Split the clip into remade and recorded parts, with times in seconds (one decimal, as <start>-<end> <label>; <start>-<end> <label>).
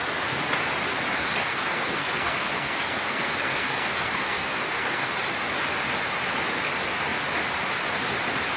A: 0.0-1.5 recorded; 1.5-5.1 remade; 5.1-8.6 recorded